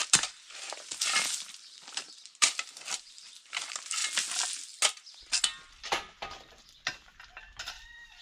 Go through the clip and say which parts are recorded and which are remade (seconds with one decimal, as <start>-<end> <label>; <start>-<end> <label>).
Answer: 0.0-4.0 remade; 4.0-7.6 recorded; 7.6-8.2 remade